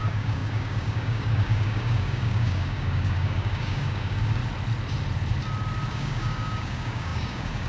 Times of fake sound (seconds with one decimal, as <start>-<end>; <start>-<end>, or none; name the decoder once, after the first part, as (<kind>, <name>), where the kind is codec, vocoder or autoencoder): 0.0-4.4 (codec, DAC); 5.9-7.7

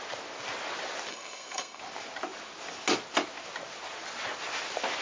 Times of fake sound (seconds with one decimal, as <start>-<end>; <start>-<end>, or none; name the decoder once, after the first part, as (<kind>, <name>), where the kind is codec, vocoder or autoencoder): 1.1-1.8 (codec, SNAC)

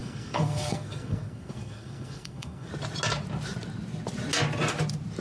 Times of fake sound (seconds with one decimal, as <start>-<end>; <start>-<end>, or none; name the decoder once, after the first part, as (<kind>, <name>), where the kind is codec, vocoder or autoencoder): 0.0-2.7 (codec, SNAC)

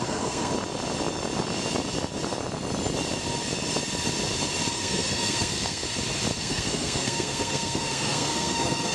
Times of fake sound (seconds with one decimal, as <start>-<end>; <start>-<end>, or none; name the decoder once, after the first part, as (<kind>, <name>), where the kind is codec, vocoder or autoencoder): 0.0-0.5 (codec, SNAC); 4.7-5.8; 6.4-8.9

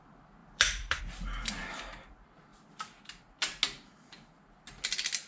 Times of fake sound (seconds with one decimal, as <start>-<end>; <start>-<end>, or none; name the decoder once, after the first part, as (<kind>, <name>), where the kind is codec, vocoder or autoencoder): 0.4-1.0 (vocoder, BigVGAN v2)